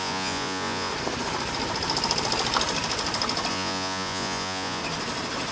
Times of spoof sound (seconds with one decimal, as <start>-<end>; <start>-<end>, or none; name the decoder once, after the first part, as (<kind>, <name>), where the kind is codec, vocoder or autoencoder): 0.0-0.9 (vocoder, Vocos); 3.5-4.8